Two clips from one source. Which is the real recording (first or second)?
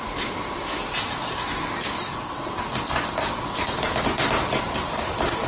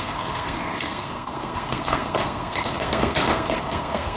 first